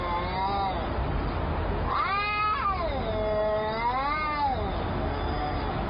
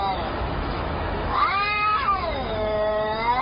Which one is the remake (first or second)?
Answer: second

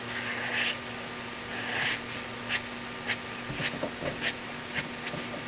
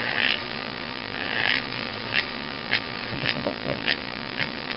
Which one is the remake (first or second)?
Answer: second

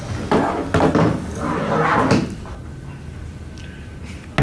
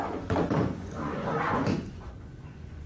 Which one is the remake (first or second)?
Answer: second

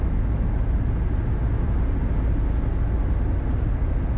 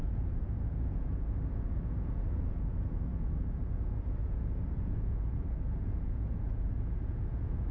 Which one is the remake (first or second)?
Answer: second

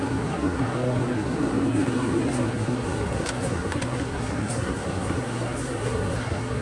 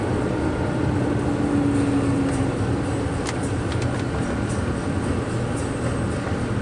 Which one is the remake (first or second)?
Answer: first